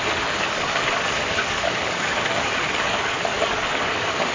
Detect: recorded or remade remade